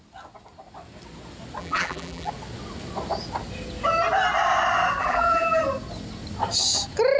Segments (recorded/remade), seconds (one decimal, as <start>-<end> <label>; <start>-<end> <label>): 0.0-1.6 recorded; 1.6-2.3 remade; 2.3-5.0 recorded; 5.0-5.6 remade; 5.6-7.2 recorded